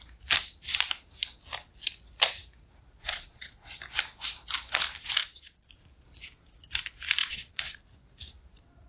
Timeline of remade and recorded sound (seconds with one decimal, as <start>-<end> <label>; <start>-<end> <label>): 0.0-3.0 recorded; 3.0-3.8 remade; 3.8-5.2 recorded; 5.2-5.7 remade; 5.7-7.2 recorded; 7.2-7.8 remade; 7.8-8.9 recorded